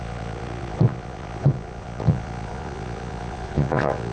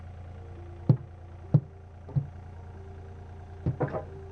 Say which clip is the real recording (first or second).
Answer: second